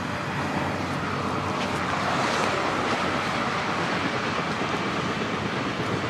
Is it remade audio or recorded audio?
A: recorded